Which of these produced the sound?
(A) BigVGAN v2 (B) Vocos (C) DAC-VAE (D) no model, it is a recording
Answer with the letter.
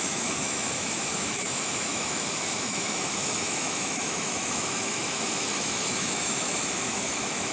C